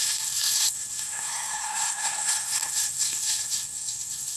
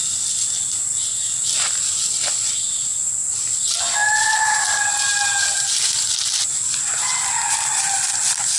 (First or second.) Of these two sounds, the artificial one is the first